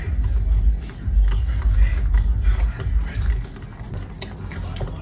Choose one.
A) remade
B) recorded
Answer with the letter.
B